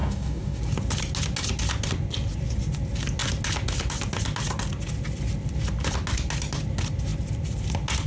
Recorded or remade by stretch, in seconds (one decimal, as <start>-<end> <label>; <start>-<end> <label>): 0.0-0.6 remade; 0.6-8.1 recorded